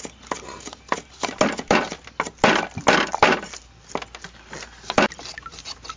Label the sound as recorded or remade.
recorded